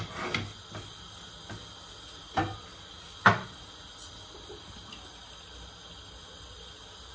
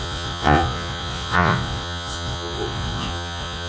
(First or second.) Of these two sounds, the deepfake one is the second